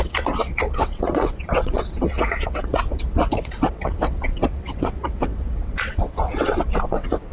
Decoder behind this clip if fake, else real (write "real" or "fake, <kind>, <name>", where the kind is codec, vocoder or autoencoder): fake, vocoder, WaveNeXt